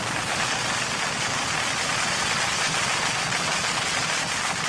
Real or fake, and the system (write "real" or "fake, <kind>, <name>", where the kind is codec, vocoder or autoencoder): real